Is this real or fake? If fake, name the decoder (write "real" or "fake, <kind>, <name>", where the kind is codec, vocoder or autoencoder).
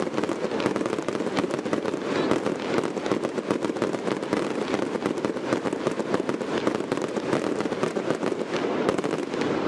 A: real